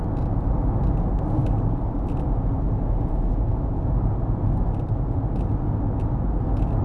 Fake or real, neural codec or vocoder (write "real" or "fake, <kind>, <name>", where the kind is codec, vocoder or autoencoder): real